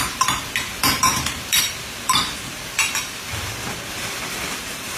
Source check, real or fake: fake